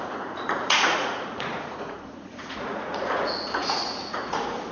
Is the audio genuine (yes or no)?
no